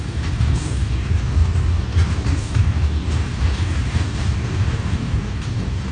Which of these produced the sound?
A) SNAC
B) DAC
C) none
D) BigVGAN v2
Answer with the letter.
B